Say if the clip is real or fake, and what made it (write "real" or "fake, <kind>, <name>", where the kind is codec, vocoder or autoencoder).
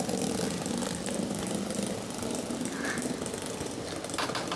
real